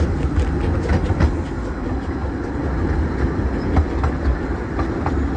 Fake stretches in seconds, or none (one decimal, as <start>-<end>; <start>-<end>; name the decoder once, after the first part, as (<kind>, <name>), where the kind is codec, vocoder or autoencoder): none